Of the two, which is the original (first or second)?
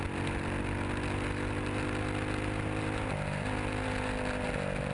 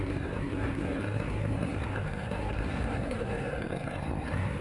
first